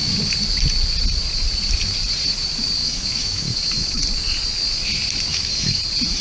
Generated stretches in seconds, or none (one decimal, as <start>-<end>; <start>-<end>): 2.8-4.0; 5.3-5.8